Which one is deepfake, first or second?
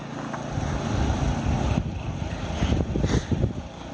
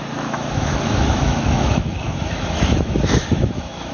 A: second